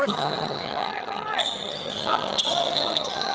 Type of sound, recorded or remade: remade